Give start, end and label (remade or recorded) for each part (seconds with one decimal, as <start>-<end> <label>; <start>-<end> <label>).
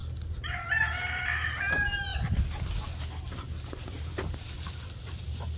0.0-0.9 recorded; 0.9-2.1 remade; 2.1-3.5 recorded; 3.5-5.6 remade